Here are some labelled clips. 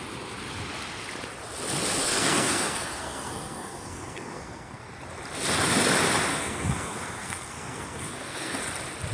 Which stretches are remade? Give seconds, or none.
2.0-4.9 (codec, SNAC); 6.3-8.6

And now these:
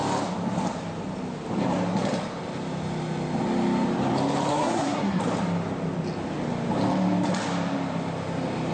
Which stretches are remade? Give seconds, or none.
4.5-5.2 (codec, SNAC)

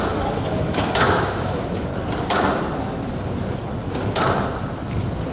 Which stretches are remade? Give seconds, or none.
0.0-1.9 (autoencoder, DAC-VAE)

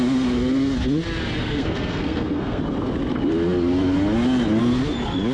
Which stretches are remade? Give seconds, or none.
1.4-2.6 (codec, SNAC)

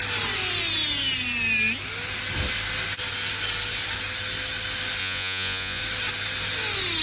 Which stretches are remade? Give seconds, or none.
5.0-5.8 (vocoder, Vocos)

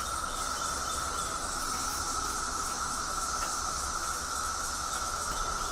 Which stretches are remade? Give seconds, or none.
1.9-5.3 (autoencoder, DAC-VAE)